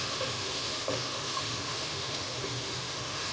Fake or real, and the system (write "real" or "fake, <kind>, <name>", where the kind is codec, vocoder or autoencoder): fake, autoencoder, DAC-VAE